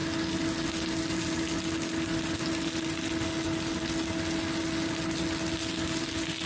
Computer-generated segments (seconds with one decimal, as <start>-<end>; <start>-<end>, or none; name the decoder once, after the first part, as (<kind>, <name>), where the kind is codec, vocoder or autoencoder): none